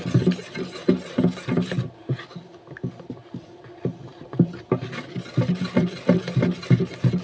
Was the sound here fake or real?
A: real